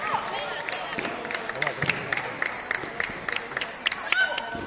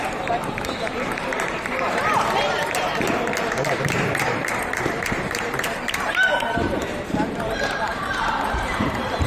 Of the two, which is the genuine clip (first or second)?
first